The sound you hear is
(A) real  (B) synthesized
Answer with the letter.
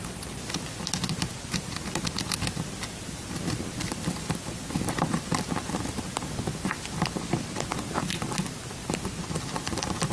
A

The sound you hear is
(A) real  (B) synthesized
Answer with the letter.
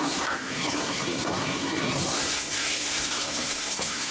B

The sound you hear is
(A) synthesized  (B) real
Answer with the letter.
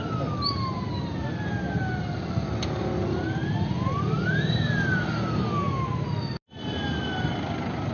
B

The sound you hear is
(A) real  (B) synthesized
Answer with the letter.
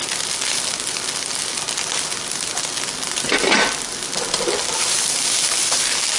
A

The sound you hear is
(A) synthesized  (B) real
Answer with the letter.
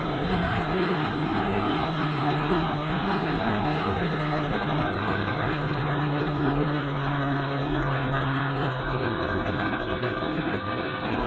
A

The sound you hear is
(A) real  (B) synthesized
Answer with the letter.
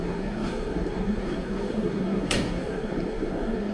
B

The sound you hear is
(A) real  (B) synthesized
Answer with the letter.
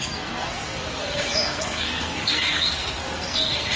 B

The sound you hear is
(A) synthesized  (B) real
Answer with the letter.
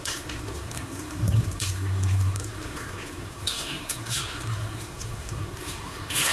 A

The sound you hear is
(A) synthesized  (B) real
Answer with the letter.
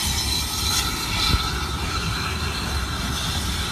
B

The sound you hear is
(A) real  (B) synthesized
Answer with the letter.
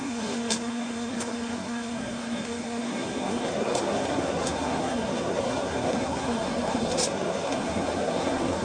B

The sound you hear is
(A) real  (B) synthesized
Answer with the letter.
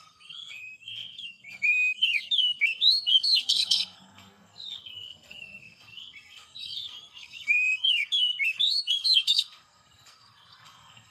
B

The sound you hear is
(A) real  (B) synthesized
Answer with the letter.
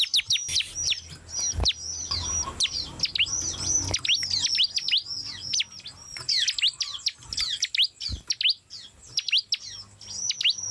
A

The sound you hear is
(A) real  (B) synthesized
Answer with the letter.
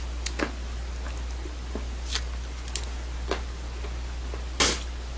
A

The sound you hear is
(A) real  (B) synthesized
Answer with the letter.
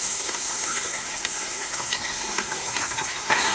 B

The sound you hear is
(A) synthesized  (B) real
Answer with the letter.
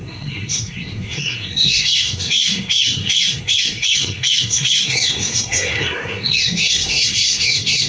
A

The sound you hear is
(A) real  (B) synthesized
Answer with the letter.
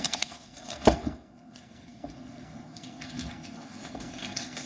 B